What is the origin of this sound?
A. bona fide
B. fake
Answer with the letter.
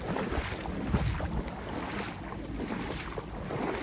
A